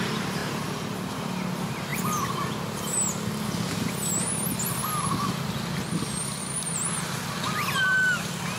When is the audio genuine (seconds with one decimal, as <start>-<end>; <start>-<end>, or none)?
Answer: 0.0-8.6